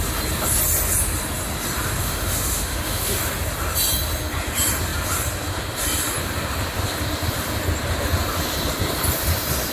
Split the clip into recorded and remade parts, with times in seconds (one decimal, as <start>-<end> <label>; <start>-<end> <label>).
0.0-2.0 recorded; 2.0-3.2 remade; 3.2-9.7 recorded